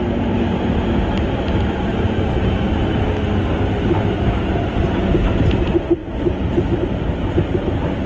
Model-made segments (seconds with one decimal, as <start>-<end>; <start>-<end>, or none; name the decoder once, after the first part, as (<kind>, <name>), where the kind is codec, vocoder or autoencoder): none